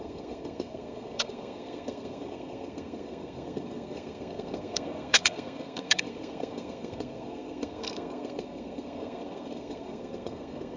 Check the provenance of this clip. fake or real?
fake